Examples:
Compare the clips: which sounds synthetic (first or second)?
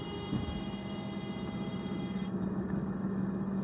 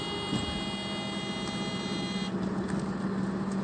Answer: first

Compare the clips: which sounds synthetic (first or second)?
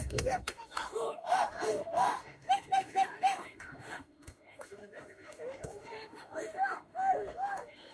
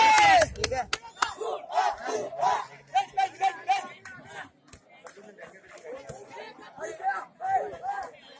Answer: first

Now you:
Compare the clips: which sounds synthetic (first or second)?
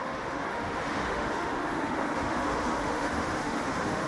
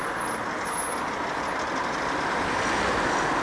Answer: first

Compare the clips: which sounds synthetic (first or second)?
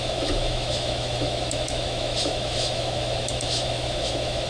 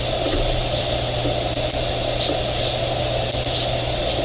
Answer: first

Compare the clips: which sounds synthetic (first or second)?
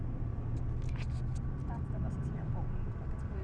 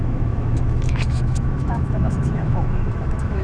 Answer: second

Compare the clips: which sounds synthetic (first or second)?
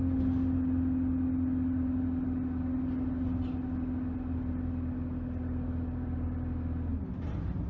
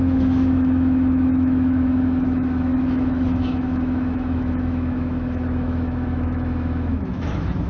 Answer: second